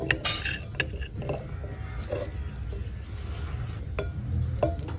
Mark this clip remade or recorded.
recorded